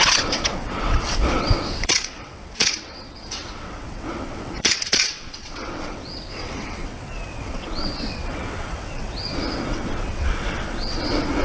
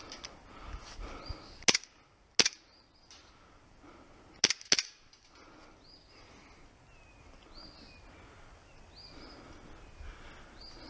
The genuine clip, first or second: second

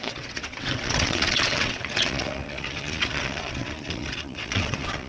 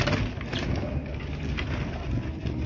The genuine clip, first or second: second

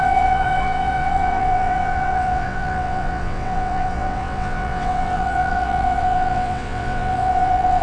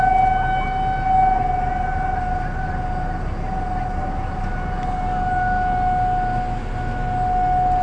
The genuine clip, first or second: second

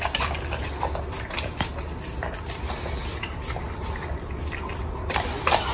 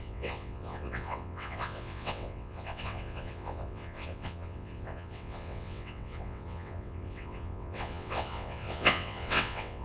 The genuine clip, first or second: first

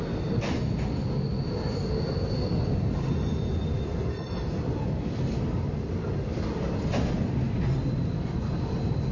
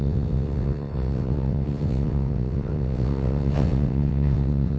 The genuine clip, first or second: first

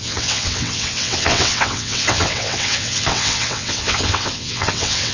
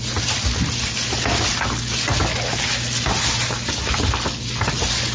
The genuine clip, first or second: second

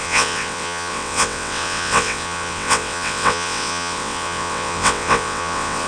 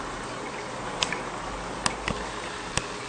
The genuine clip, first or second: second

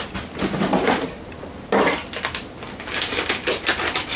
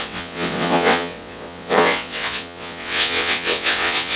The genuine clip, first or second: first